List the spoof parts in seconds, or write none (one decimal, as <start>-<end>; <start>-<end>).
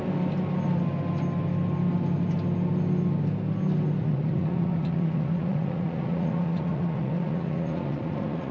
4.0-8.5